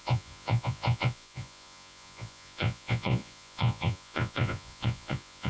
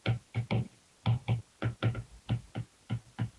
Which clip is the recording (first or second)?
second